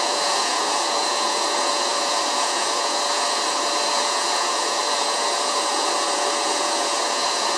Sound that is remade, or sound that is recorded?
remade